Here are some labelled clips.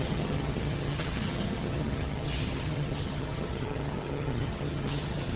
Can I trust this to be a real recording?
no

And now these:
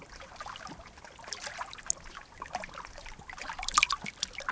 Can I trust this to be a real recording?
yes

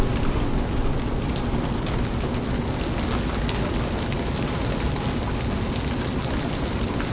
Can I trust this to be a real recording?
yes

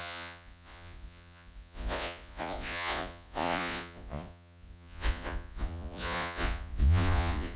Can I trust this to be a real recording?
no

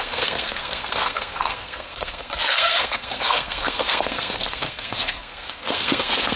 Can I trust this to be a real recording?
no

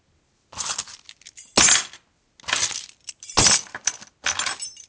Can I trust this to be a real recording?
yes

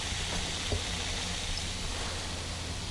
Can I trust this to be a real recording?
yes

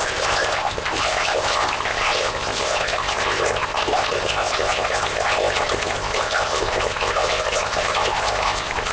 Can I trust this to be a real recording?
no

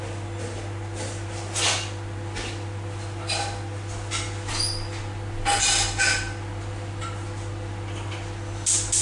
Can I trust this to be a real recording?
yes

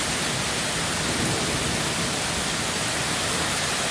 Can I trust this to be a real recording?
yes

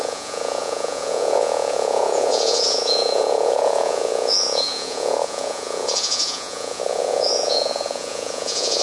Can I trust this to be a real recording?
no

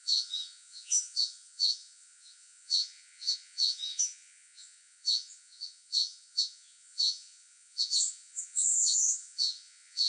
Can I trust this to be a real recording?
no